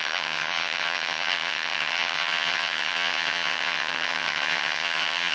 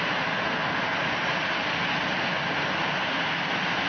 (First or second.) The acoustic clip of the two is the second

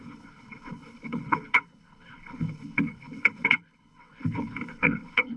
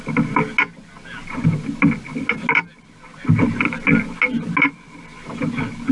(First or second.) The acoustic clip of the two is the second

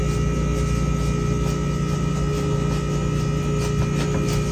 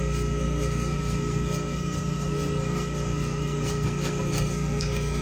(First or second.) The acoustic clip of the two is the first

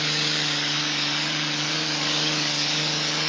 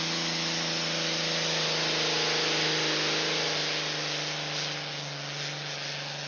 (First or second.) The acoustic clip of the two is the second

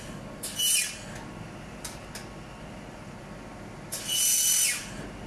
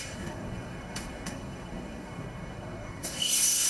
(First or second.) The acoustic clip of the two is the first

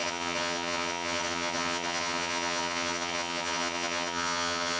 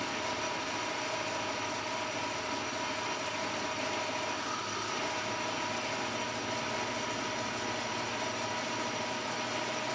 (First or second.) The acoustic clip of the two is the second